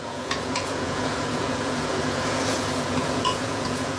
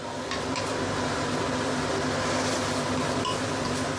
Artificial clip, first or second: first